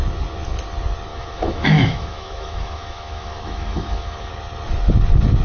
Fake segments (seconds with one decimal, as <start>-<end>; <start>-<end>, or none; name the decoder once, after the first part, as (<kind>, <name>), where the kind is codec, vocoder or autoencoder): 1.1-4.3 (autoencoder, DAC-VAE)